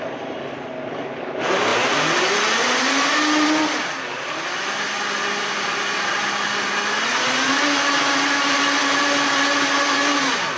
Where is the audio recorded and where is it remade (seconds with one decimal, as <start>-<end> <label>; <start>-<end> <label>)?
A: 0.0-10.6 recorded